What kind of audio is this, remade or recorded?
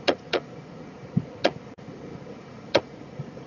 remade